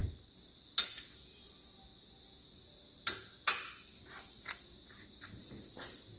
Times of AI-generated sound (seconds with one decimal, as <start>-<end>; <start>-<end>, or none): none